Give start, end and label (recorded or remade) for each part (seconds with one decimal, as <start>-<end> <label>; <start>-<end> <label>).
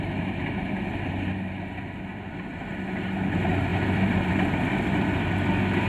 0.0-2.1 recorded; 2.1-2.7 remade; 2.7-3.7 recorded; 3.7-5.2 remade; 5.2-5.9 recorded